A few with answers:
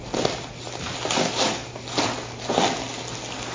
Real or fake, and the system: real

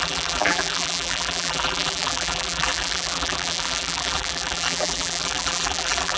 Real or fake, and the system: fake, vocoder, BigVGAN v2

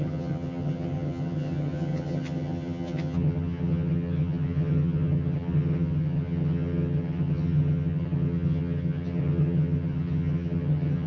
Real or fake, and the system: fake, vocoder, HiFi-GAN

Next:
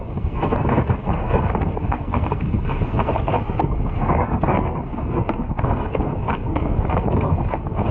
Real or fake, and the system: fake, codec, SNAC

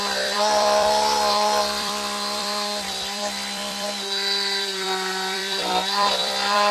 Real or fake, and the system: fake, vocoder, BigVGAN v2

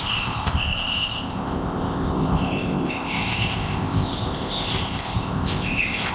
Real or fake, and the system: fake, codec, ZipCodec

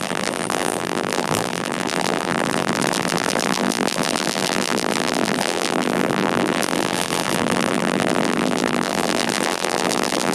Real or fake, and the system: fake, vocoder, BigVGAN v2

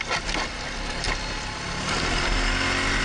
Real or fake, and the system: real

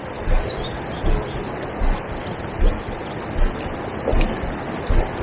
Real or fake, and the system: real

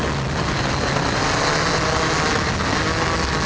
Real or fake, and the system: real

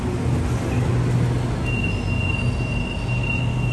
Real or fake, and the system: real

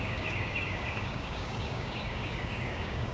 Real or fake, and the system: fake, codec, DAC